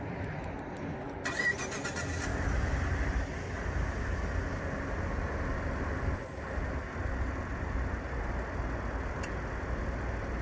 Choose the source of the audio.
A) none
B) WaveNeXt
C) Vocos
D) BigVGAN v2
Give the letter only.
A